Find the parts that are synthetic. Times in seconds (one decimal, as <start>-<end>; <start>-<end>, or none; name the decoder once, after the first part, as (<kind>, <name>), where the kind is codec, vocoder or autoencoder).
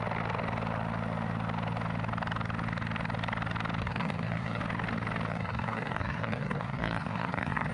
3.8-4.6 (codec, SNAC); 5.3-7.7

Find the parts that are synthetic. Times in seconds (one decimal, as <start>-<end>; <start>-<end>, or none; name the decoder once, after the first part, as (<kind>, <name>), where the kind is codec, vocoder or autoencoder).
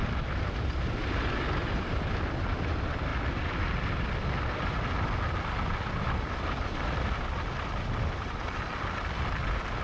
0.0-1.2 (vocoder, BigVGAN v2); 1.6-2.1